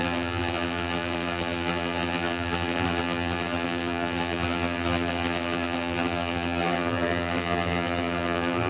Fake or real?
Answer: fake